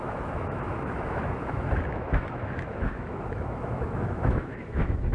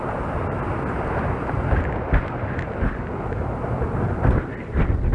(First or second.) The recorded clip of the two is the second